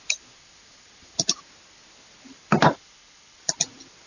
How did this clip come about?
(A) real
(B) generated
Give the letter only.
A